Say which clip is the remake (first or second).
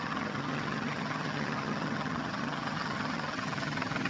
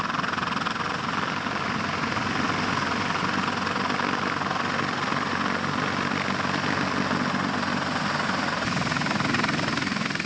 first